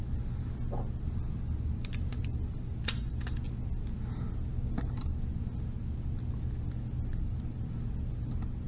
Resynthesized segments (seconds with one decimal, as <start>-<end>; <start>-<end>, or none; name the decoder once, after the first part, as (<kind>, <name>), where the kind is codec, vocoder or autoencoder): none